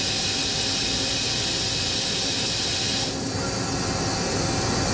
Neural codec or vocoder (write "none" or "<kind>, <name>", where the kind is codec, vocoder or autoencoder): none